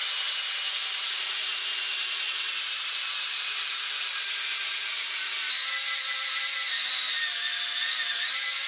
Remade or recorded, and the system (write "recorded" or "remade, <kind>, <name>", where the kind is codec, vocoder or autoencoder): remade, vocoder, BigVGAN v2